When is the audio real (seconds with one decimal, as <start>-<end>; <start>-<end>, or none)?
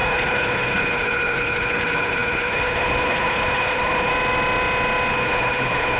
4.1-5.1